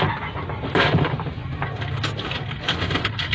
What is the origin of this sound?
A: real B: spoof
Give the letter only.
A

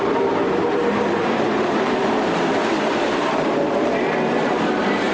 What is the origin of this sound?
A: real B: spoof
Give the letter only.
B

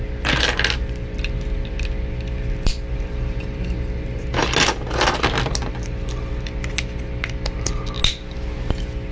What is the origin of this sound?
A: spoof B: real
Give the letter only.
B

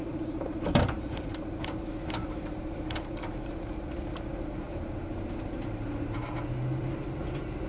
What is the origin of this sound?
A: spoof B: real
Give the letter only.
A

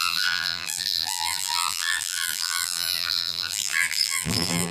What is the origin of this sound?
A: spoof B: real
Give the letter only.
A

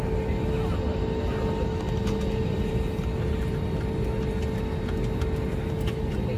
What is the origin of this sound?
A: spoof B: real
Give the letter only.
B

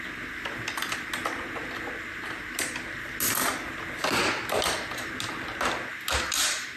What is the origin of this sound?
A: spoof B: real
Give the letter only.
B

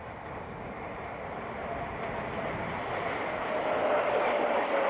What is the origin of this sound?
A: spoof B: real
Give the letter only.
A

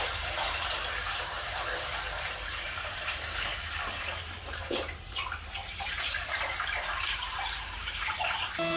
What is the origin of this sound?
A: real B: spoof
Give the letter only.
B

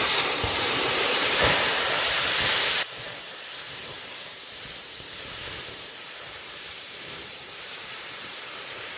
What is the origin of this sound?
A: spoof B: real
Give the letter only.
A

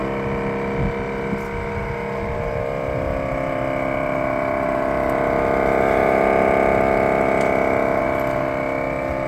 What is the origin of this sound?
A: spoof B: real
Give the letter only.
B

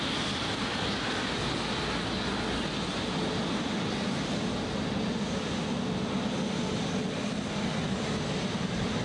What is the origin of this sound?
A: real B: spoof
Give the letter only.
A